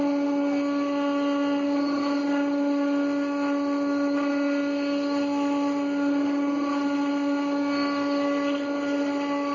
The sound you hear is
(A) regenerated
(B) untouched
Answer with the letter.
B